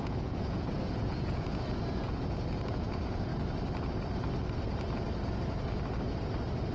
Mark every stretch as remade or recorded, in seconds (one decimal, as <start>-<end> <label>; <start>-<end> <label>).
0.0-3.3 remade; 3.3-6.7 recorded